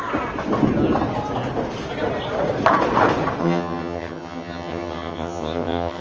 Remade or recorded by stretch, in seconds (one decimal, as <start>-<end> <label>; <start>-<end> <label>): 0.0-3.4 recorded; 3.4-6.0 remade